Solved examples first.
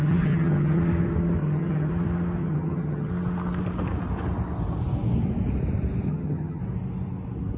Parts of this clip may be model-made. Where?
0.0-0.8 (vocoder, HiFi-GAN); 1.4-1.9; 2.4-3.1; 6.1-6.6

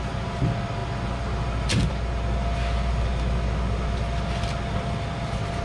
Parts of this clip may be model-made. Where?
none

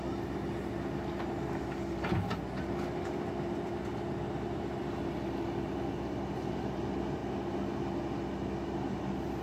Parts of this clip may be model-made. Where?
none